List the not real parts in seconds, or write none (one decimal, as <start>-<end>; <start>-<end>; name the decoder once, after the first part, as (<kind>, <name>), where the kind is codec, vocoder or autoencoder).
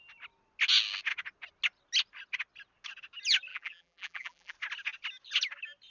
3.5-4.5 (vocoder, BigVGAN v2)